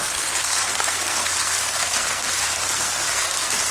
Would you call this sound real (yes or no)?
no